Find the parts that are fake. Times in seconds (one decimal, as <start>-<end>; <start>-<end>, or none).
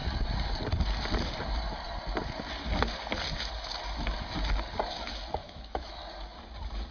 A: 5.4-6.0